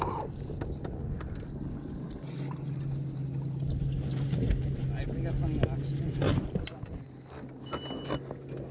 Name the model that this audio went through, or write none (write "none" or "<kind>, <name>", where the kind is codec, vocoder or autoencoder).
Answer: none